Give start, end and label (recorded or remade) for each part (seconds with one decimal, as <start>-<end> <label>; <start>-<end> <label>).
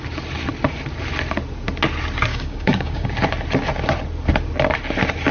0.0-2.3 recorded; 2.3-3.1 remade; 3.1-5.3 recorded